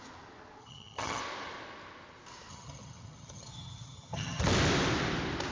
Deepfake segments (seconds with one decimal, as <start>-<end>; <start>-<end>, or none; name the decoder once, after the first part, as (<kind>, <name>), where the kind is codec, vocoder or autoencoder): 0.6-1.2 (vocoder, HiFi-GAN); 2.5-4.4